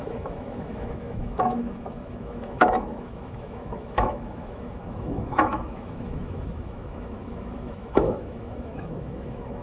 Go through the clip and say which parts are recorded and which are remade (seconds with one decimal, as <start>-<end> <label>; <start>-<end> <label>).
0.0-9.6 remade